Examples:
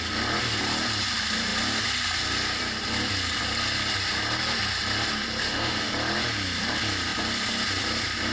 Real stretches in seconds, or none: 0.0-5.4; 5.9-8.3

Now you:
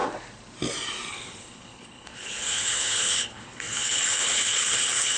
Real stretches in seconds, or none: 0.0-1.1